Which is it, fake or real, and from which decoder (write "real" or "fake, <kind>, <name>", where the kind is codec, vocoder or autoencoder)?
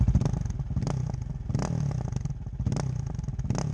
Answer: real